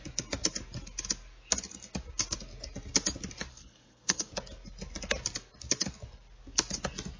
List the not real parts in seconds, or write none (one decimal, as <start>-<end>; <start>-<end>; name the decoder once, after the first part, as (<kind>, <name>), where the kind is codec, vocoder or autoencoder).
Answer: 3.5-4.3 (codec, SNAC)